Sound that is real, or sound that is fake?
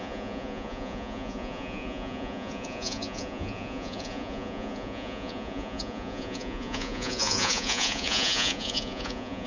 fake